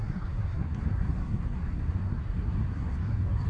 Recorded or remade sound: remade